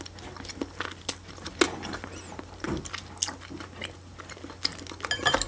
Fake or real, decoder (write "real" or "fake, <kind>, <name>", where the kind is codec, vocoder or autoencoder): real